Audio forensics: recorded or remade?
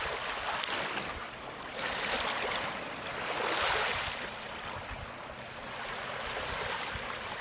recorded